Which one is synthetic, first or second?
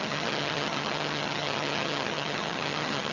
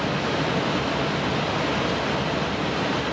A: first